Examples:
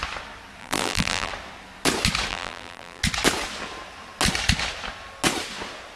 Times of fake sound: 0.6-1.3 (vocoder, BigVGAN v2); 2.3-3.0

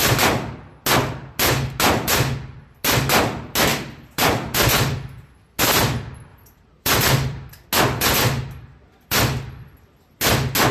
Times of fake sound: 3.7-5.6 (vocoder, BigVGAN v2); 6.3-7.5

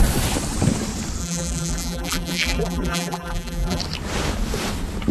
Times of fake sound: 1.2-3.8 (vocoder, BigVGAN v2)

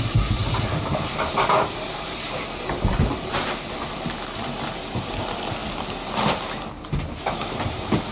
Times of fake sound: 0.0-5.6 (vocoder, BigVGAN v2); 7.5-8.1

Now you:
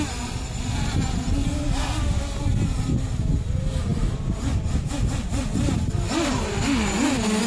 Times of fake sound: 3.9-4.9 (vocoder, BigVGAN v2)

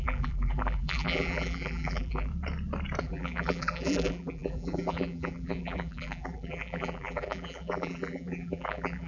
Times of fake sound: 0.0-2.3 (vocoder, BigVGAN v2); 3.0-9.1